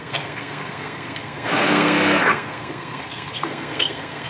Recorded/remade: remade